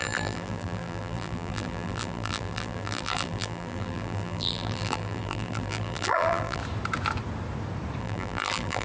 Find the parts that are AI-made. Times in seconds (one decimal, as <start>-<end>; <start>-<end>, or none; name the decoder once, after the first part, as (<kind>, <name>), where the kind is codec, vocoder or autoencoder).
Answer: 0.0-6.6 (vocoder, BigVGAN v2); 8.0-8.8